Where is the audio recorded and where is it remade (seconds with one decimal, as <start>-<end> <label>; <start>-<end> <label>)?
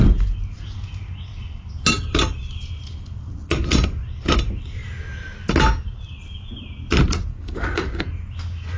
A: 0.0-7.3 recorded; 7.3-8.0 remade; 8.0-8.8 recorded